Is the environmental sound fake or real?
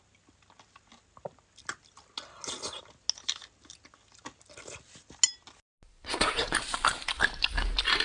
real